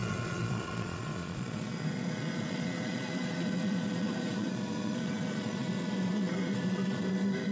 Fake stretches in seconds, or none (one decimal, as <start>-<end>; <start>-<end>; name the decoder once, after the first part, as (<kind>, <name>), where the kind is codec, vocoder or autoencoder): 0.0-7.5 (vocoder, Vocos)